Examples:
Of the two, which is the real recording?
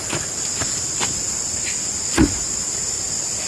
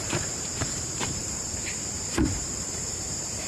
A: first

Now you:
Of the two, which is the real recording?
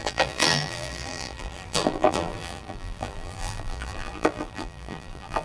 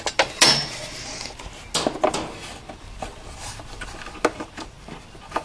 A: second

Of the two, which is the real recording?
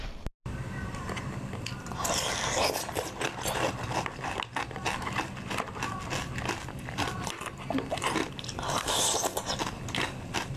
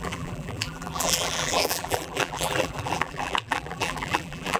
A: first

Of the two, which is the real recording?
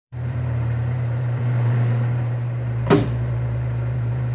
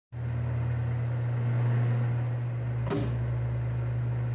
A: second